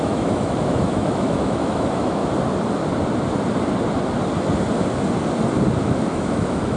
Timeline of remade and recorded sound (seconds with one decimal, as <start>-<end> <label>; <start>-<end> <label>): 0.0-2.2 remade; 2.2-5.8 recorded; 5.8-6.8 remade